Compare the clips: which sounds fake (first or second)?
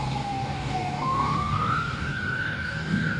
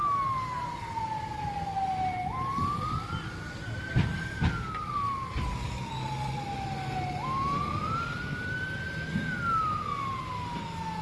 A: first